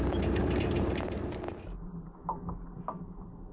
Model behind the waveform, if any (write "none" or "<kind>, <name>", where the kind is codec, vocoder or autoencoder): none